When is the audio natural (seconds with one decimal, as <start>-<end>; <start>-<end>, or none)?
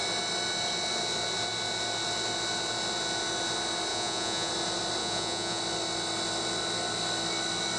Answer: 0.0-3.9; 4.5-5.0; 5.6-7.8